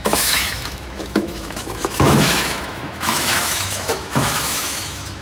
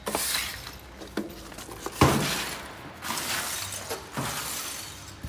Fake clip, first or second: first